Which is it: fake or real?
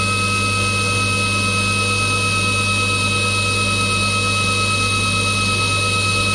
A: real